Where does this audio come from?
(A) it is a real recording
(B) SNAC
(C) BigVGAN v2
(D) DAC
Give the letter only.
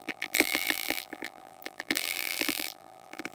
C